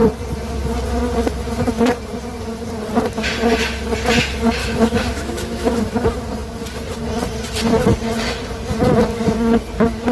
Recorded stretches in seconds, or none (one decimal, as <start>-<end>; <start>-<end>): 0.0-4.6; 5.8-10.1